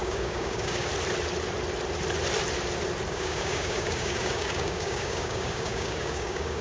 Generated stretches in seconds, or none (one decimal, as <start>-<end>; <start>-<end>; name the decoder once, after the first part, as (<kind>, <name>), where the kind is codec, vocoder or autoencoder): 0.0-0.9 (codec, DAC); 3.1-6.6